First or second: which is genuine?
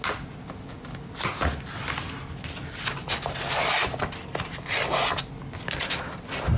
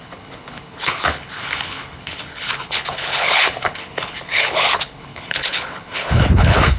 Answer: first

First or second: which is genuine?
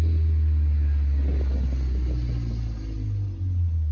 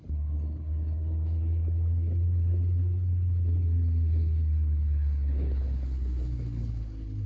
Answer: first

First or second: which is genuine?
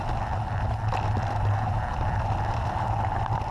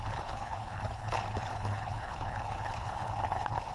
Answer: first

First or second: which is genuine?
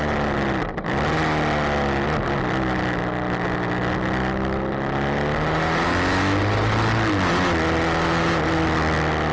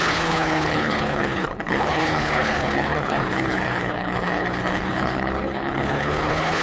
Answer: first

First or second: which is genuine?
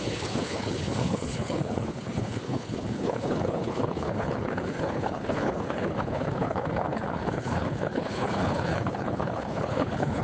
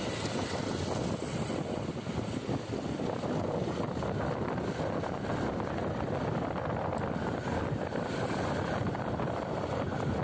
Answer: second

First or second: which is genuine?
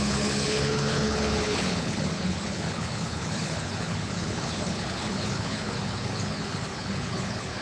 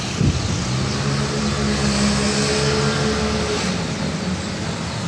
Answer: second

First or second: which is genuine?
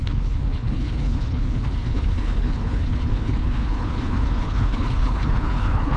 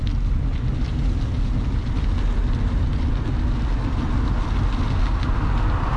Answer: second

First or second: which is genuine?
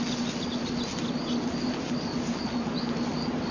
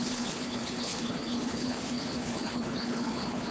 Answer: first